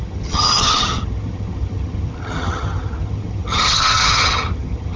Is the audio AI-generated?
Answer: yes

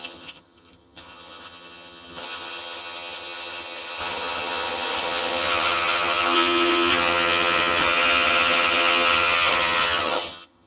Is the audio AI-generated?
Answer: yes